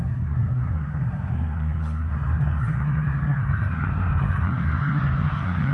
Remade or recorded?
remade